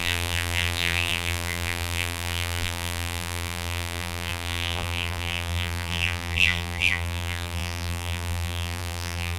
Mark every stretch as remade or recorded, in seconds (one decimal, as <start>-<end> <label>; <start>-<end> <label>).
0.0-9.4 remade